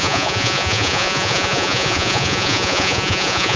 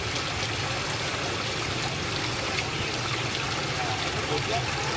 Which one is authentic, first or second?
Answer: second